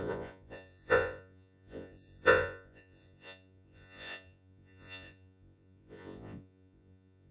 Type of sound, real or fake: fake